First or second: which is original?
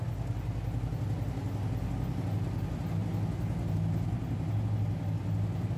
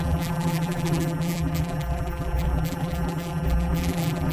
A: first